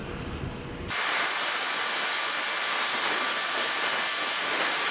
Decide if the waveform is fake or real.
real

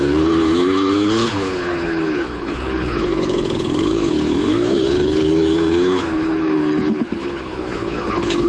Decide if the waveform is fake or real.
fake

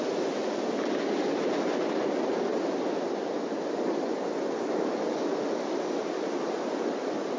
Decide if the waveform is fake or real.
real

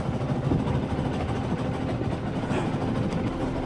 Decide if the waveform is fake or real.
real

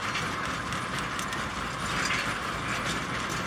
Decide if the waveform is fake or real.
real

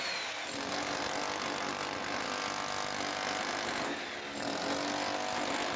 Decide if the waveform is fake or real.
real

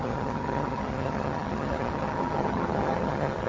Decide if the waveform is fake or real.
fake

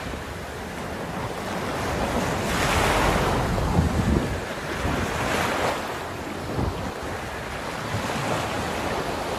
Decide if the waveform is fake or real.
real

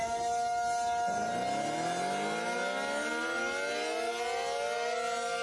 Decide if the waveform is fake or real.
real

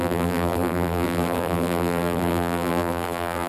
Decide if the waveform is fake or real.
fake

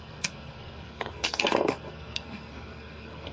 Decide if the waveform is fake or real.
fake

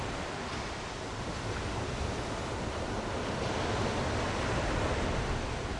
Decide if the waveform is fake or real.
real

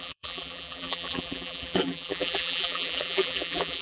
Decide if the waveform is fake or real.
fake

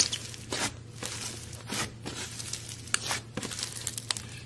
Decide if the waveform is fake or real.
real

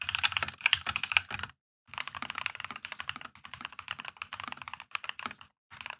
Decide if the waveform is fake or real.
real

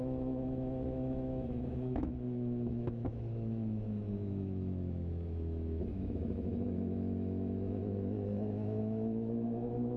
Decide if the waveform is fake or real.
fake